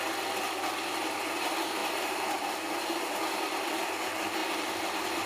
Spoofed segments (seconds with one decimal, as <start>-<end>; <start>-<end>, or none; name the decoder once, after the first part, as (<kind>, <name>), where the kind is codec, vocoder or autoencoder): 1.8-3.0 (vocoder, BigVGAN v2)

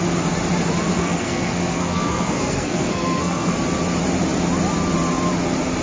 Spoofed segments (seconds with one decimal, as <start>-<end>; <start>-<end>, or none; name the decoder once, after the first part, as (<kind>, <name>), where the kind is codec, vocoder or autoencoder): 0.9-3.5 (codec, SNAC)

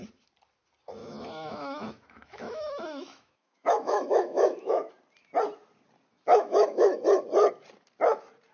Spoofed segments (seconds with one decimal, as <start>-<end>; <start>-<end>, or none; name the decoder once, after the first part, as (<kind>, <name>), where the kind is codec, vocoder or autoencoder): 1.0-4.9 (autoencoder, DAC-VAE); 6.3-7.0

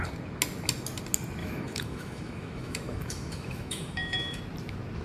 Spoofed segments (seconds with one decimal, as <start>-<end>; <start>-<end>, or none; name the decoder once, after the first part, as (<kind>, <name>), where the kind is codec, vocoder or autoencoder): 1.4-4.4 (autoencoder, DAC-VAE)